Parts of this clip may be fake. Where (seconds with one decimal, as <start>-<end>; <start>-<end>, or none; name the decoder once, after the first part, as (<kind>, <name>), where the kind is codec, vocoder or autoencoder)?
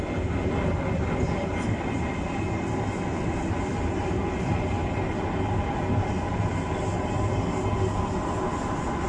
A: none